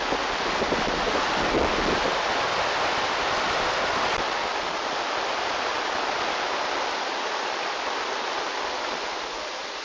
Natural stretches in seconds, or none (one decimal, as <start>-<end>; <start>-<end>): 0.0-9.8